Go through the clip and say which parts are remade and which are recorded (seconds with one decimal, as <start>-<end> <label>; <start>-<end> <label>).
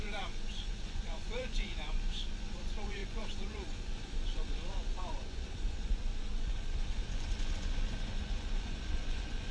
0.0-9.5 remade